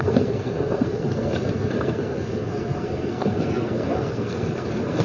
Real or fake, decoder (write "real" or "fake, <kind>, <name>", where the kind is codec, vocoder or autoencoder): fake, codec, SNAC